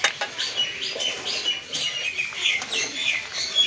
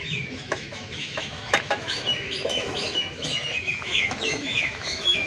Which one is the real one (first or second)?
first